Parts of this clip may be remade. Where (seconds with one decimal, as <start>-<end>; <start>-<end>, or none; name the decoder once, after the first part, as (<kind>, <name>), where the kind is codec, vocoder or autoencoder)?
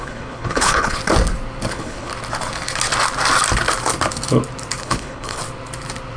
0.0-1.0 (codec, HILCodec); 1.7-2.1; 4.8-5.4